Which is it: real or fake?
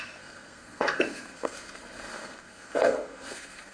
fake